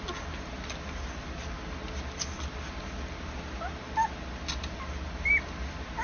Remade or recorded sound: recorded